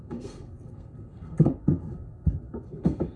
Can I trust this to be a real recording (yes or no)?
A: no